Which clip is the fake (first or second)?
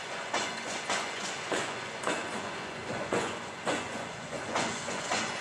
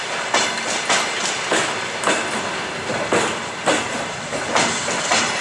first